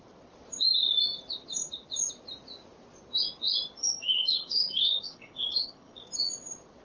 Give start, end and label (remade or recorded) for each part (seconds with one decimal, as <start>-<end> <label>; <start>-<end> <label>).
0.0-3.8 recorded; 3.8-6.0 remade; 6.0-6.8 recorded

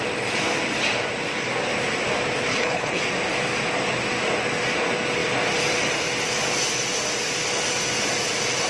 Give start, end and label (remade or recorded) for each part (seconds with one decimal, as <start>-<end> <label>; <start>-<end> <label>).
0.0-2.5 recorded; 2.5-3.0 remade; 3.0-8.7 recorded

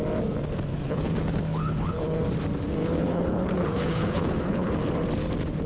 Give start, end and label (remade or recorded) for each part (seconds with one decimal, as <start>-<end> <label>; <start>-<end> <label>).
0.0-0.7 recorded; 0.7-2.2 remade; 2.2-2.8 recorded; 2.8-4.7 remade; 4.7-5.7 recorded

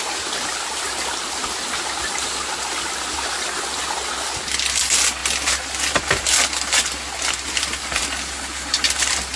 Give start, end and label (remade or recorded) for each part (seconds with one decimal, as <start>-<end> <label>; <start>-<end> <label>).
0.0-9.4 recorded